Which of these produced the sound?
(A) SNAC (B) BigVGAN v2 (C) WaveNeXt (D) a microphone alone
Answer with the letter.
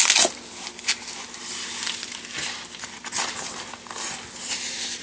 D